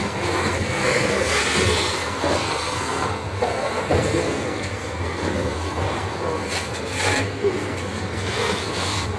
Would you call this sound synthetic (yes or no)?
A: yes